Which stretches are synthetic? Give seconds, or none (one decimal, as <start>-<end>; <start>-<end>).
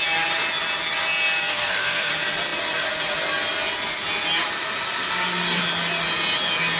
1.5-2.1